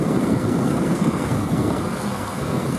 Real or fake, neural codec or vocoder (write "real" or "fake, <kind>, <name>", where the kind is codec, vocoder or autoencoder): fake, codec, SNAC